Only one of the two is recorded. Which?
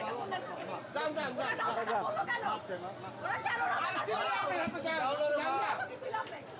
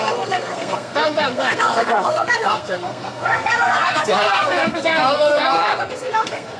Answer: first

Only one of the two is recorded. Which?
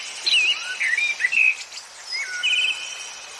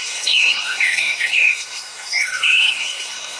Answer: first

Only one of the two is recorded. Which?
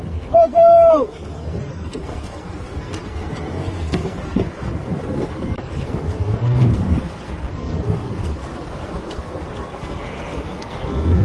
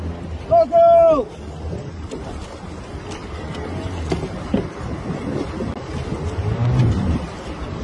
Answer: second